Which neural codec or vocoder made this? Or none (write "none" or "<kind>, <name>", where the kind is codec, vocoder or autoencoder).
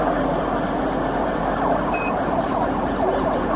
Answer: none